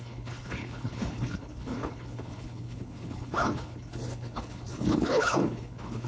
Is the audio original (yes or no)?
no